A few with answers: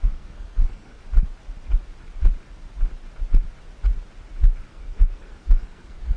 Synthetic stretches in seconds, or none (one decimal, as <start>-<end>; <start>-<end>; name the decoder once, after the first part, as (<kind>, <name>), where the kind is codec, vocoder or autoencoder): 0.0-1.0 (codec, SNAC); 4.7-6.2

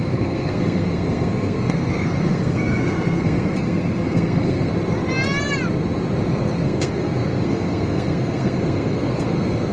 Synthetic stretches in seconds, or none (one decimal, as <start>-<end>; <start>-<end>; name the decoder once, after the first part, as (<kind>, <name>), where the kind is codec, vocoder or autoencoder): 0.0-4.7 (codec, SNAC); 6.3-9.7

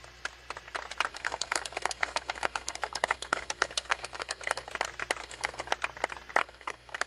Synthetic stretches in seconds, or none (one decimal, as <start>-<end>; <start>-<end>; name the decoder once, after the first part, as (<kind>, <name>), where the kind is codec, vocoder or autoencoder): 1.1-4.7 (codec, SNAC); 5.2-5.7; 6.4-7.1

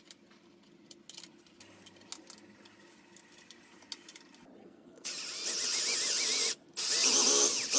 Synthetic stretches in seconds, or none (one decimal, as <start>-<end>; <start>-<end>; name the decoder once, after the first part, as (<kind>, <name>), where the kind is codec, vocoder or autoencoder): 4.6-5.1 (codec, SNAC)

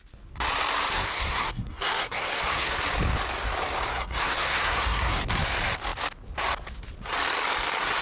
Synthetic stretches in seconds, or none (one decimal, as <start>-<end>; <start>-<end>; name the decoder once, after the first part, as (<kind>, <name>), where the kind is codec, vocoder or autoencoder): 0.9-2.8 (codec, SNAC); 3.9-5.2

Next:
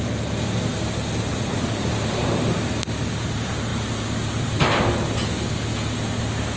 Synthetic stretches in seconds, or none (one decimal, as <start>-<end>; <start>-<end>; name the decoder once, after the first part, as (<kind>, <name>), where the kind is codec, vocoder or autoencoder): 1.3-1.9 (vocoder, Vocos)

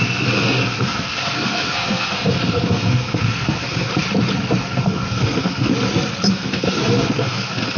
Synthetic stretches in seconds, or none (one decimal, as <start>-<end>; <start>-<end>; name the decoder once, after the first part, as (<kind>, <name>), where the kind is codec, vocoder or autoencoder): 0.0-3.9 (codec, SNAC); 4.6-5.7; 6.3-7.8

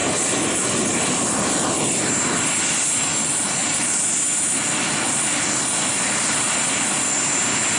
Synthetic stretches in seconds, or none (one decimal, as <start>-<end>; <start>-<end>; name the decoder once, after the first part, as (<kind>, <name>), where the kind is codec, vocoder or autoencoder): none